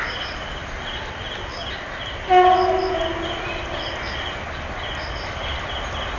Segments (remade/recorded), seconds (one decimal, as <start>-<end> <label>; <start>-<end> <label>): 0.0-6.2 recorded